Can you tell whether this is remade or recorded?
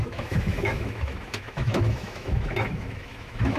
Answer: remade